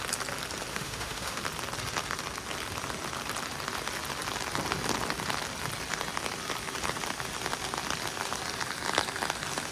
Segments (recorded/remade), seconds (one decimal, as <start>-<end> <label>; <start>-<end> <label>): 0.0-0.7 recorded; 0.7-1.4 remade; 1.4-9.7 recorded